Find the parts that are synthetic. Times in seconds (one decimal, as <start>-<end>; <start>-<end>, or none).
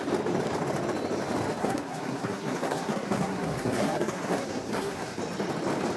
1.6-5.2